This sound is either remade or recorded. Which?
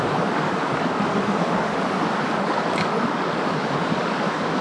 remade